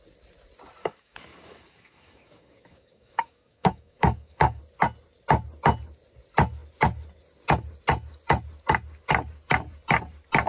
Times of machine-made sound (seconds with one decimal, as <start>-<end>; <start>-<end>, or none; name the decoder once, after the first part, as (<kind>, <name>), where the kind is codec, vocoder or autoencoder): 0.8-4.6 (codec, DAC)